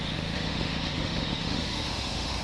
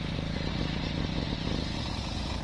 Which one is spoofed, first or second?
first